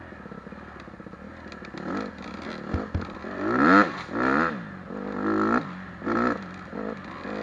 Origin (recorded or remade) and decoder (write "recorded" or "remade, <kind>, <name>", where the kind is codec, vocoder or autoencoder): recorded